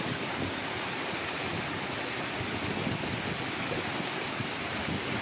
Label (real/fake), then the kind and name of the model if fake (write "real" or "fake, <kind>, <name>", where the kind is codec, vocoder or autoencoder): real